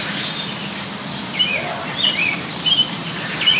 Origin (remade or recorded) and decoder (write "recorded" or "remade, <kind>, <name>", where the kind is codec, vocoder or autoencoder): recorded